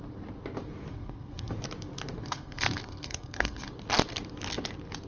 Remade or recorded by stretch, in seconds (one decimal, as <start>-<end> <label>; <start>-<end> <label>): 0.0-0.9 recorded; 0.9-1.5 remade; 1.5-2.2 recorded; 2.2-3.7 remade; 3.7-5.1 recorded